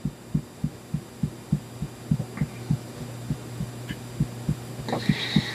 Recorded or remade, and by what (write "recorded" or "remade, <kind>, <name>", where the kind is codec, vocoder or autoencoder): recorded